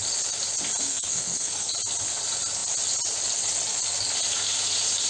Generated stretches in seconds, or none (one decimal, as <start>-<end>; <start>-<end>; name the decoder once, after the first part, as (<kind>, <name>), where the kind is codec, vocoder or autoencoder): 0.8-1.7 (codec, SNAC)